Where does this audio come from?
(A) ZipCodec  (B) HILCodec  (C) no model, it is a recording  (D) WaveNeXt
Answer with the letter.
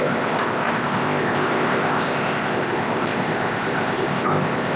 A